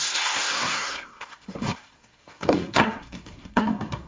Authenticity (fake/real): fake